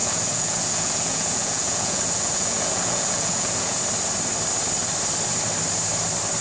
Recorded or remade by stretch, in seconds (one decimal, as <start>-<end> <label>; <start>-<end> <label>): 0.0-3.8 remade; 3.8-6.4 recorded